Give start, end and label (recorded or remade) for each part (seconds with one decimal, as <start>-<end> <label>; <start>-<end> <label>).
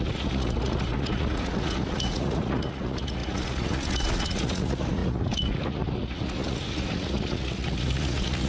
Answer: 0.0-8.5 remade